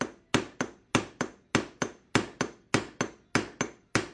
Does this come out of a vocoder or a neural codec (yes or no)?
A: no